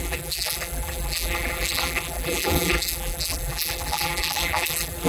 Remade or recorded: remade